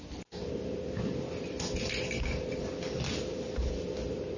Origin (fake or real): real